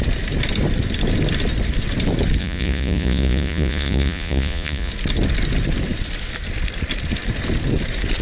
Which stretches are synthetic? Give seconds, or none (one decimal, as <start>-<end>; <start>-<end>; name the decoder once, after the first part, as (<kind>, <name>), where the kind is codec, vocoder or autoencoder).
2.4-4.9 (vocoder, Vocos)